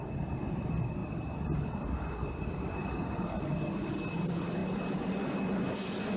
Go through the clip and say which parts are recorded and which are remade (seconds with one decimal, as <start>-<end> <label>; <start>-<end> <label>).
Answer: 0.0-6.2 recorded